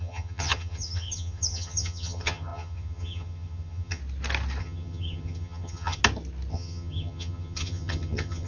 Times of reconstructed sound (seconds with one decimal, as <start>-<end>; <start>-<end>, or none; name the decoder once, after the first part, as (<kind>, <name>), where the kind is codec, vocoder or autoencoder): 0.0-4.0 (vocoder, HiFi-GAN); 4.6-6.0; 6.5-8.5